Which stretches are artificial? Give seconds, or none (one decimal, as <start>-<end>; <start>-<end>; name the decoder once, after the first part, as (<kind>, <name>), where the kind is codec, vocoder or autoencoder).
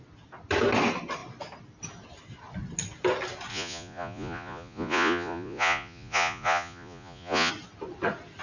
3.5-7.5 (vocoder, Vocos)